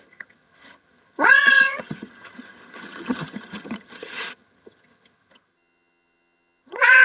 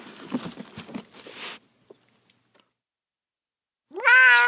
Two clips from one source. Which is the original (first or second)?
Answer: second